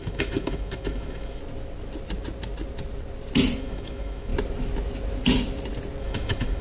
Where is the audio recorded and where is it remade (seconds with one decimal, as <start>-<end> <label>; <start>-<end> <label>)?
0.0-1.4 remade; 1.4-3.6 recorded; 3.6-4.3 remade; 4.3-6.0 recorded; 6.0-6.6 remade